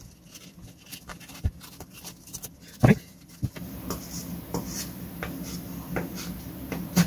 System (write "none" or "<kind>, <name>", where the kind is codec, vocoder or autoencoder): none